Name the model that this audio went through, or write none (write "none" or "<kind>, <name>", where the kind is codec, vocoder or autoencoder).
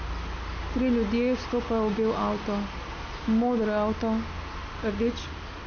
none